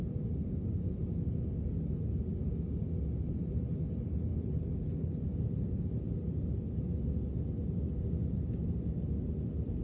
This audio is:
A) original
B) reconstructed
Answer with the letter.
A